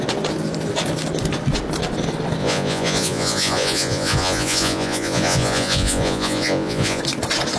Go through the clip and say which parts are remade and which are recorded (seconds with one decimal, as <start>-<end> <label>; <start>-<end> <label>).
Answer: 0.0-2.4 recorded; 2.4-7.0 remade; 7.0-7.6 recorded